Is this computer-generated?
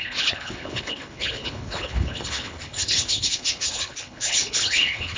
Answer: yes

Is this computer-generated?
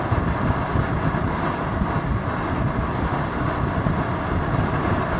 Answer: no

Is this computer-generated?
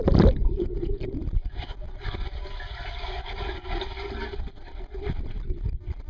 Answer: no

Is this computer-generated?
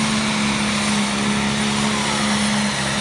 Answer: no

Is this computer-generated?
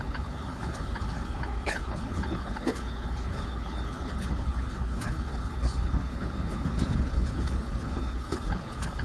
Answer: yes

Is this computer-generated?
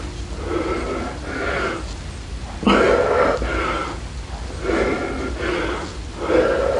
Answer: no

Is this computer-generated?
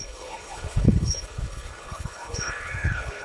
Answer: yes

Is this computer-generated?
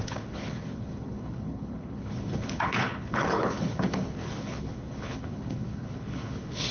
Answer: yes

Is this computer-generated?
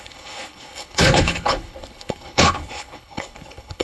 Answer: yes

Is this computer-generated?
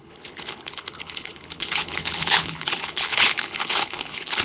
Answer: yes